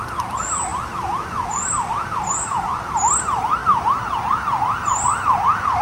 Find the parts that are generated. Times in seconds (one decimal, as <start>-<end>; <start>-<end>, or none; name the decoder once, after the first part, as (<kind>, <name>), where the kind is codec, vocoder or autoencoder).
none